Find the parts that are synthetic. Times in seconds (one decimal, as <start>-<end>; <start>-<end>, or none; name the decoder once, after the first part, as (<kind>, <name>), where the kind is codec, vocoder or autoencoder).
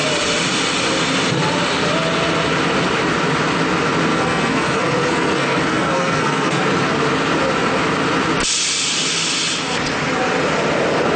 4.1-6.6 (codec, SNAC)